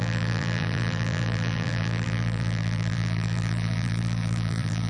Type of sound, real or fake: fake